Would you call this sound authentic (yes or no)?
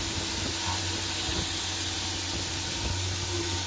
yes